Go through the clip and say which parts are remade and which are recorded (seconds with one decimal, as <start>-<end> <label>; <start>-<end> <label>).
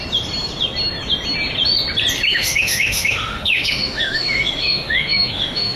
0.0-2.3 recorded; 2.3-5.8 remade